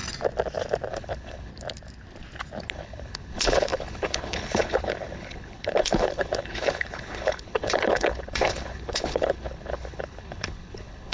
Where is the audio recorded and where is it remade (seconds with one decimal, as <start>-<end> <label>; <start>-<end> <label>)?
0.0-0.9 recorded; 0.9-1.5 remade; 1.5-2.7 recorded; 2.7-11.1 remade